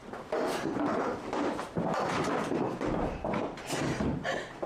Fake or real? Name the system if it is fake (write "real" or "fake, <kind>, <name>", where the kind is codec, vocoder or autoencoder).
fake, vocoder, BigVGAN v2